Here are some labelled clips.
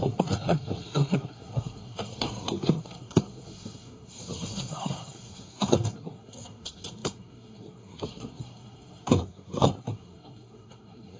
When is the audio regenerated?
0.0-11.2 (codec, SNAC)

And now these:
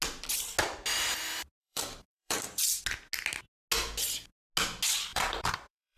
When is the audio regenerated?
1.6-2.8 (vocoder, BigVGAN v2); 5.1-6.0

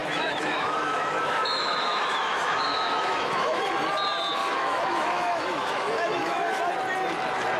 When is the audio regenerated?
0.0-3.6 (autoencoder, DAC-VAE); 4.4-6.6

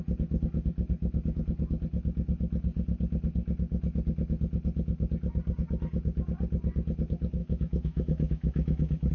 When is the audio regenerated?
7.4-9.1 (autoencoder, DAC-VAE)

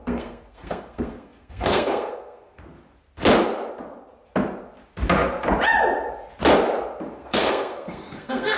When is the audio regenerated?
0.0-2.6 (codec, SNAC); 7.1-8.6